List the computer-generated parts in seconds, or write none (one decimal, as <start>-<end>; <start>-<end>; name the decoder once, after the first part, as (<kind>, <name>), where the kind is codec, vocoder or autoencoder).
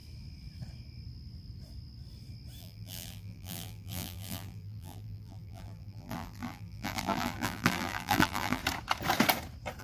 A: 2.6-8.6 (vocoder, BigVGAN v2)